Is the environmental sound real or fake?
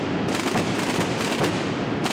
real